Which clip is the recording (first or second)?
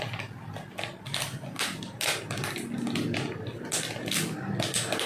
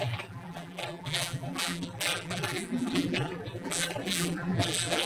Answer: first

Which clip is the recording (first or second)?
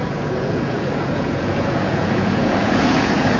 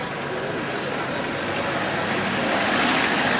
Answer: second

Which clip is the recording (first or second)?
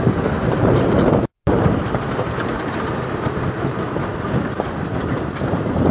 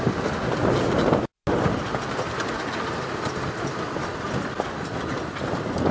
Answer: second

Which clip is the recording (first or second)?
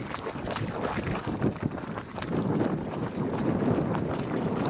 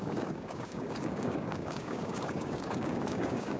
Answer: first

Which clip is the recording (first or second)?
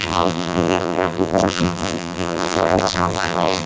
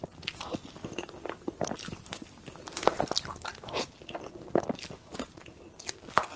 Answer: second